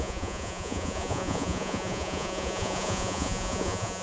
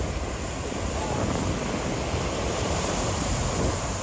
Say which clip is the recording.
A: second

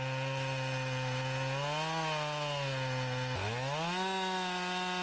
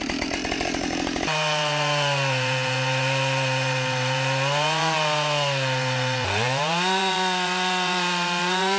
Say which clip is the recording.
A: first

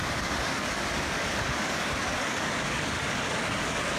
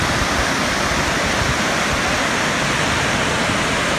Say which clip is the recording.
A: second